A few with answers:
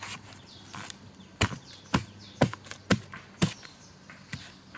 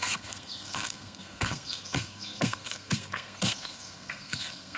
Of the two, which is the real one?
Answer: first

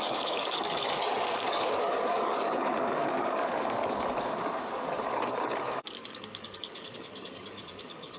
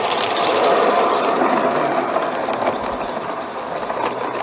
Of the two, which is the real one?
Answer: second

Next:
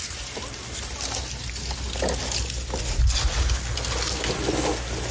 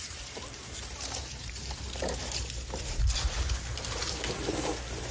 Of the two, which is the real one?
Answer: first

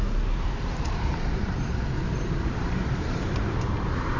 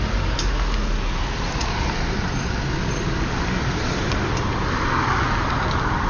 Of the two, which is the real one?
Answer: second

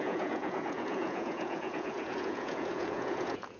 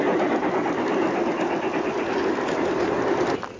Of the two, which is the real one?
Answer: second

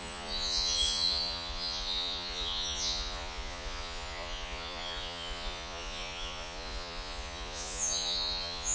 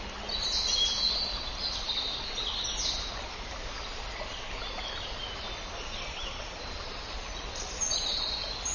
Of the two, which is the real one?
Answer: second